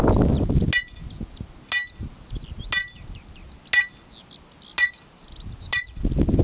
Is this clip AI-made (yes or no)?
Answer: no